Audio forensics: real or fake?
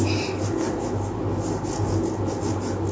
real